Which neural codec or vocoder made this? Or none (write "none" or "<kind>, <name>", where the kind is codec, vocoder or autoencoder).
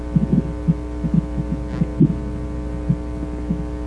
none